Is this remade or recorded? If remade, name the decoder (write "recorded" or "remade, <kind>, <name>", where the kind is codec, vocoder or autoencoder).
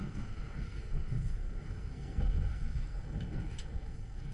remade, codec, SNAC